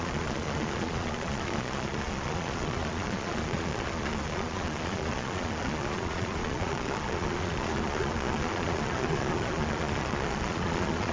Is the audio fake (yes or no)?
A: yes